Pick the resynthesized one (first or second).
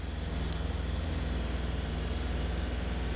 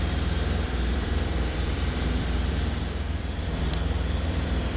second